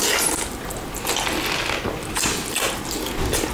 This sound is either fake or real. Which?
real